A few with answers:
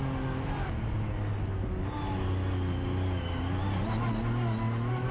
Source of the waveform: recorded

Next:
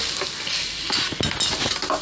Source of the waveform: recorded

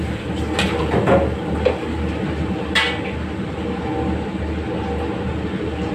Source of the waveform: recorded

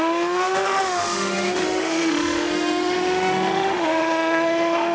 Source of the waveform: remade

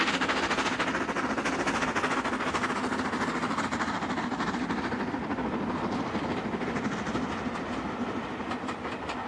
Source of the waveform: recorded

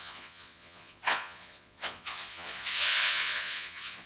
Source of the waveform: remade